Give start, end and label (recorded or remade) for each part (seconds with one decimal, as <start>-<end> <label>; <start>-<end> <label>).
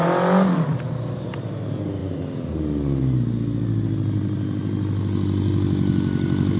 0.0-6.6 recorded